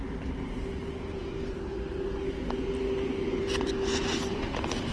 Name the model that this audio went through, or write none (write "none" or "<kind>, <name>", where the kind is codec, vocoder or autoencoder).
none